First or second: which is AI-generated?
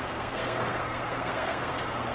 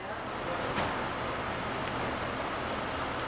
first